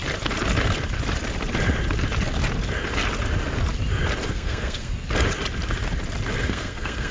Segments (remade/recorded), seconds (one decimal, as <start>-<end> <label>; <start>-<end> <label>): 0.0-4.3 recorded; 4.3-4.9 remade; 4.9-6.4 recorded; 6.4-7.1 remade